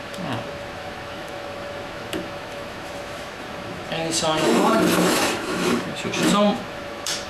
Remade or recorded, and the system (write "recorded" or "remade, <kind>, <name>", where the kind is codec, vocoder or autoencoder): remade, autoencoder, DAC-VAE